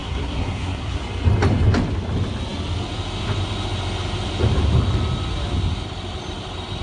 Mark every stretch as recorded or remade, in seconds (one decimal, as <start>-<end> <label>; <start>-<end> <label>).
0.0-1.0 remade; 1.0-6.8 recorded